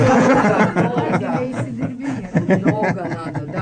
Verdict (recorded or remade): remade